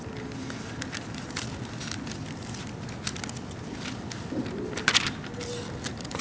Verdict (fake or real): real